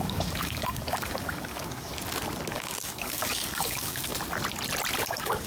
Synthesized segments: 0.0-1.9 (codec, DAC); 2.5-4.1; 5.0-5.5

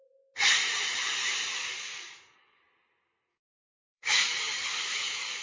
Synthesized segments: 1.6-2.6 (codec, DAC); 3.3-5.4

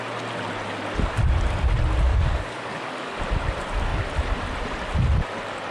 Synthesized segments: 2.1-3.2 (codec, DAC)

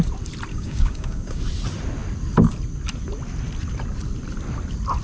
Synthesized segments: 0.5-1.4 (codec, DAC)

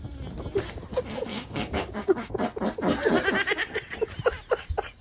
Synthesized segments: 1.3-2.3 (codec, DAC)